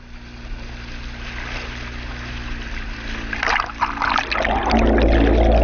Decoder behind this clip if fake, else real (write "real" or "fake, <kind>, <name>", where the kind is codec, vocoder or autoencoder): real